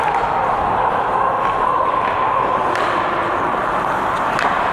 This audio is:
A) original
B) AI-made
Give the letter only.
A